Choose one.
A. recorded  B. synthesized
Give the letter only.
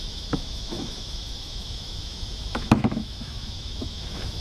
B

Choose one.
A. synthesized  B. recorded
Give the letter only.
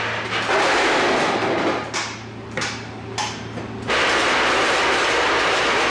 A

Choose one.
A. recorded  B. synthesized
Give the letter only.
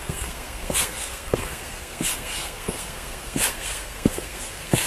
B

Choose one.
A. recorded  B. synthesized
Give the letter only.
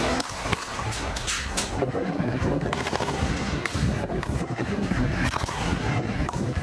B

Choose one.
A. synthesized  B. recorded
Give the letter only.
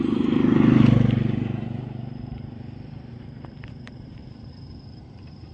A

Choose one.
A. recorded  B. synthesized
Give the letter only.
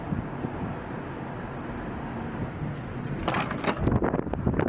A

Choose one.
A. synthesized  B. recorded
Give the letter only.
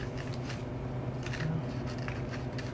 B